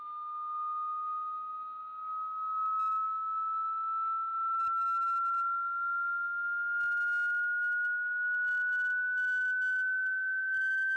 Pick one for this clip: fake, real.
real